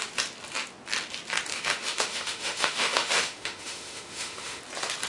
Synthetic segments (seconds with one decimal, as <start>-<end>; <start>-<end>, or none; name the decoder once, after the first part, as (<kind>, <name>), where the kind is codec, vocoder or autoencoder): 1.5-4.6 (autoencoder, DAC-VAE)